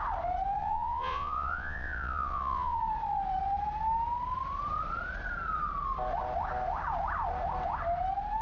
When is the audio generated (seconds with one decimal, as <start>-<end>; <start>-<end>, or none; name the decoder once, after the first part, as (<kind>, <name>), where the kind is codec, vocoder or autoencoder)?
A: 0.6-2.8 (vocoder, Vocos)